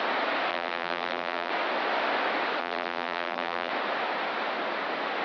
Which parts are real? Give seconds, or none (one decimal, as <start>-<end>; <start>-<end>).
0.0-0.5; 1.5-2.6; 3.7-5.2